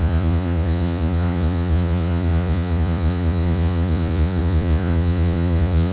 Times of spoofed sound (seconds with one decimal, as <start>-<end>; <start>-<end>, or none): 0.0-5.9